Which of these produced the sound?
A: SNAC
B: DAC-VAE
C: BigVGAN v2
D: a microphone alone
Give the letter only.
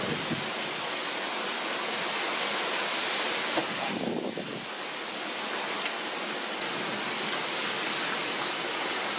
D